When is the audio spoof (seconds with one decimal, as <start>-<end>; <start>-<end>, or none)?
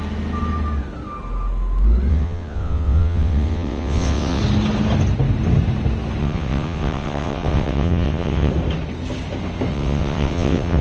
2.1-4.4; 6.2-8.5; 9.7-10.8